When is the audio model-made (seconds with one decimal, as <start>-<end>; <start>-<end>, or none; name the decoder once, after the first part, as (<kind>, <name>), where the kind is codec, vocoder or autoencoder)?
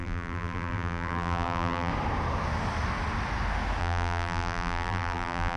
0.0-1.9 (vocoder, BigVGAN v2); 3.8-5.6